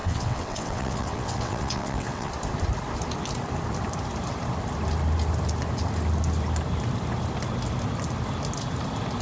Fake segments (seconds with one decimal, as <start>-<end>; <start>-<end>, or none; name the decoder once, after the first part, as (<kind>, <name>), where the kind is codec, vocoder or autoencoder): 0.0-2.3 (vocoder, WaveNeXt)